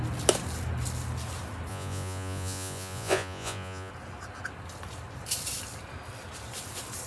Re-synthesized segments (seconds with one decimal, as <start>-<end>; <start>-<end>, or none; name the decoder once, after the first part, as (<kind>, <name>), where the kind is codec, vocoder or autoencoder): 1.7-3.9 (vocoder, Vocos)